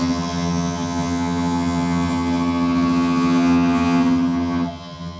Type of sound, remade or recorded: remade